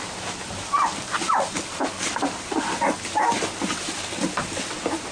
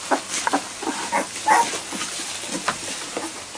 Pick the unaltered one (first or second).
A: second